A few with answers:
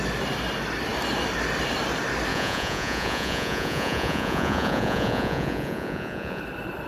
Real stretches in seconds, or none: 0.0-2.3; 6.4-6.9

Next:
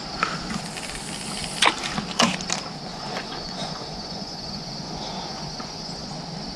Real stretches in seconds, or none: 0.0-2.9; 6.1-6.6

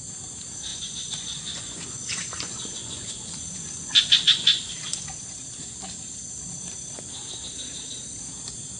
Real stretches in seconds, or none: 0.0-0.7; 4.7-8.8

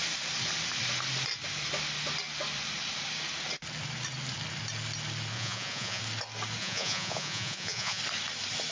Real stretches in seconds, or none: 0.0-5.3; 6.0-6.6; 8.0-8.7

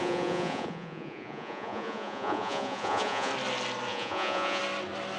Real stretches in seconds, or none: 3.3-3.9; 4.6-5.2